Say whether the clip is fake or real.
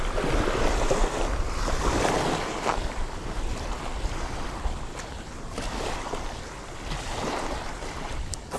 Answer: real